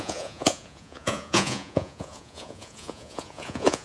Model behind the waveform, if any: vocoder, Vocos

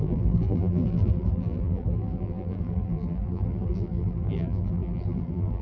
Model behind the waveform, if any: vocoder, BigVGAN v2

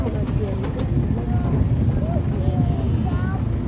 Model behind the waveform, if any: none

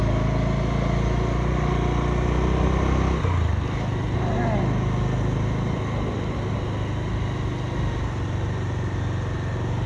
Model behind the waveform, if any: none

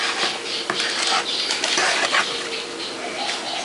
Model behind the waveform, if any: vocoder, BigVGAN v2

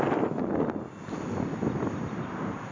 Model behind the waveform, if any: none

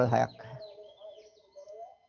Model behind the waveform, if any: none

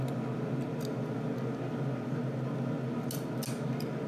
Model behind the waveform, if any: none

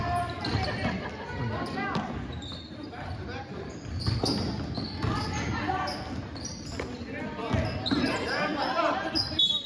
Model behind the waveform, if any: none